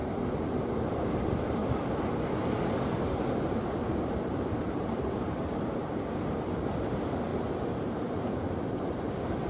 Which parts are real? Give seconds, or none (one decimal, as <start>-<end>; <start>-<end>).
1.6-3.0; 7.3-8.1

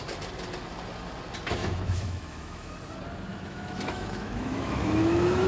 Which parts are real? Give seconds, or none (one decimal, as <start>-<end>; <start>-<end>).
0.0-1.6; 2.7-3.3

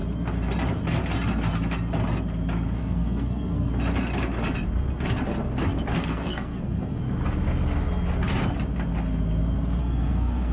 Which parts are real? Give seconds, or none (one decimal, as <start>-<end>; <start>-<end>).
0.0-2.8; 3.7-6.0; 7.0-9.8

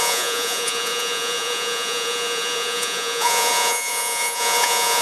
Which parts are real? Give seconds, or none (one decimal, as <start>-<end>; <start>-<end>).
none

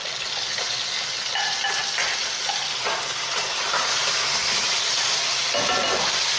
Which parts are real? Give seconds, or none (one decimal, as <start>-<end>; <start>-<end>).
0.0-6.4

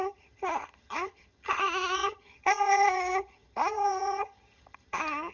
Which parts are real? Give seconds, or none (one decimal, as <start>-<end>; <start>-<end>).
none

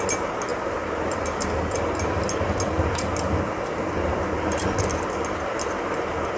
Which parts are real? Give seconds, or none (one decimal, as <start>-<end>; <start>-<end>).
0.0-6.4